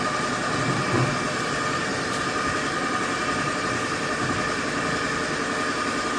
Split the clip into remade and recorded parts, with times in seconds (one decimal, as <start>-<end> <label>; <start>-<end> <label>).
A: 0.0-6.2 recorded